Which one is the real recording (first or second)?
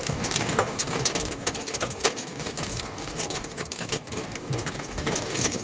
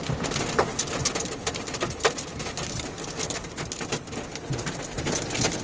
second